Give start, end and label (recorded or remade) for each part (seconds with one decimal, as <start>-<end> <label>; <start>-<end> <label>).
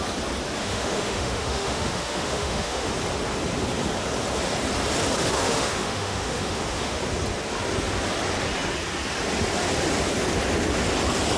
0.0-0.6 recorded; 0.6-2.9 remade; 2.9-5.2 recorded; 5.2-7.0 remade; 7.0-11.4 recorded